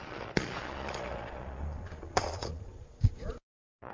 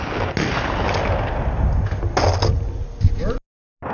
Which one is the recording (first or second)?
second